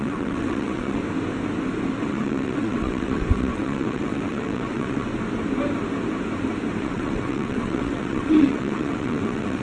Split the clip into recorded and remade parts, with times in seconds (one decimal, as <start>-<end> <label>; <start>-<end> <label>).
0.0-1.0 remade; 1.0-2.0 recorded; 2.0-5.1 remade; 5.1-6.8 recorded; 6.8-9.6 remade